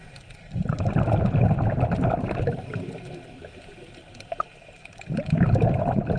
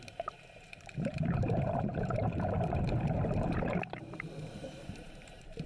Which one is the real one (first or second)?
first